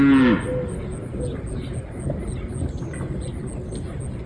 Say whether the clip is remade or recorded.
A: recorded